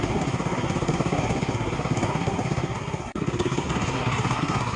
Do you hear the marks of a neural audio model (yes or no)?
yes